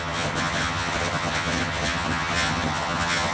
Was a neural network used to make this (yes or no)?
yes